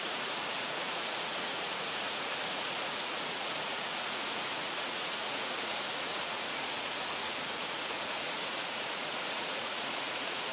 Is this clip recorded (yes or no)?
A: no